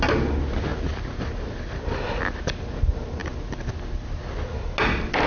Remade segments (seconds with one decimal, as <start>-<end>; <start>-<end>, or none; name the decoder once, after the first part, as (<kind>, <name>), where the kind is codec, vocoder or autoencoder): none